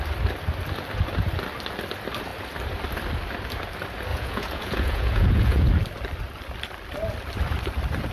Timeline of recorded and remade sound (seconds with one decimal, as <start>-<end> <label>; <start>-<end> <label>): 0.0-4.1 recorded; 4.1-5.7 remade; 5.7-8.1 recorded